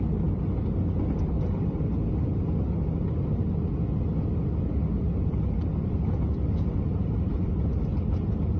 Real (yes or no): yes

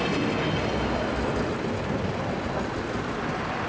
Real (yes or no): yes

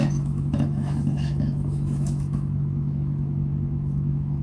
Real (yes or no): no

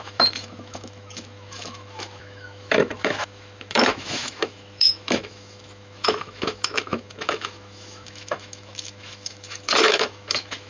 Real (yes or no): no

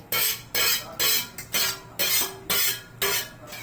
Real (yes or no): yes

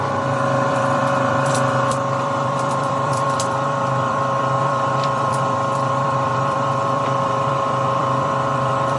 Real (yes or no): no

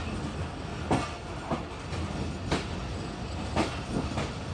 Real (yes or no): yes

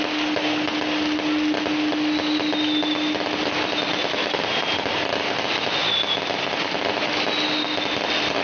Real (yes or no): yes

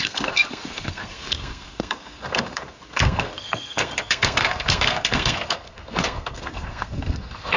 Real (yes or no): no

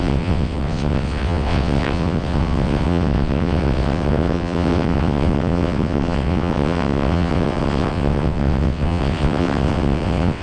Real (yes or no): no